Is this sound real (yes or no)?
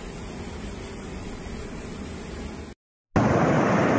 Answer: yes